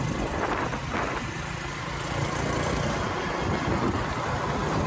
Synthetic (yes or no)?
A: no